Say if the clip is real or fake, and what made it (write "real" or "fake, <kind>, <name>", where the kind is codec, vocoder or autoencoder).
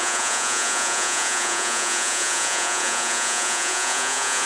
fake, vocoder, Vocos